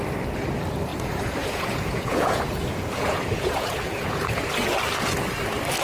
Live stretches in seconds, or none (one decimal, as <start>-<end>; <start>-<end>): 0.0-0.9; 4.4-5.8